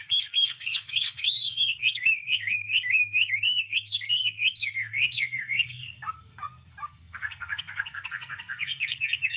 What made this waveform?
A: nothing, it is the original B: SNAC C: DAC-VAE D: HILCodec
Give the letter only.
B